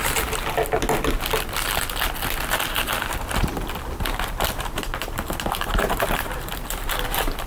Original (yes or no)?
yes